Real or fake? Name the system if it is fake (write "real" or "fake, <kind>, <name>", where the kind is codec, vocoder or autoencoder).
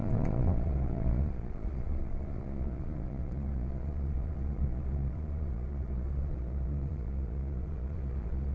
fake, vocoder, Vocos